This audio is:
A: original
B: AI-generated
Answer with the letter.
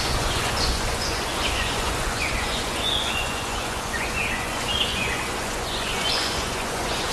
B